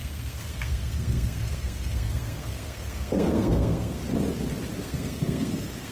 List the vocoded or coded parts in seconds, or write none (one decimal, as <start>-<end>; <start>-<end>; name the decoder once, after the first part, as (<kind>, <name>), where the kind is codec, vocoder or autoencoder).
0.0-4.0 (codec, SNAC); 4.8-5.9